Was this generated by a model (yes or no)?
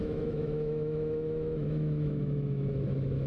yes